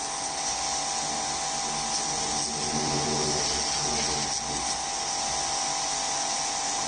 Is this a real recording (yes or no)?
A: yes